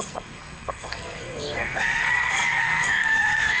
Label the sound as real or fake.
fake